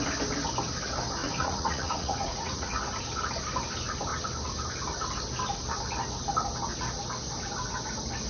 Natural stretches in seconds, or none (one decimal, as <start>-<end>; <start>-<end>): 0.0-1.2; 2.8-8.3